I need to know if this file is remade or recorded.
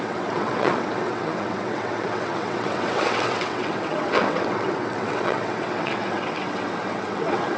remade